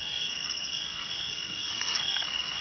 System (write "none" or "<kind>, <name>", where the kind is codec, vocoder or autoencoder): codec, SNAC